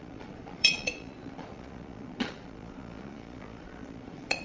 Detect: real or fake fake